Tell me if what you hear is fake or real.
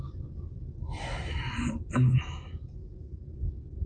real